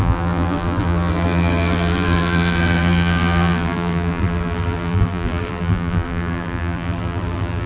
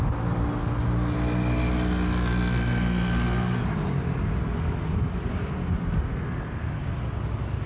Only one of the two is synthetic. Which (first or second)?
first